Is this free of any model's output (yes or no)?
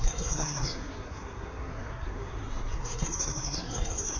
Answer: no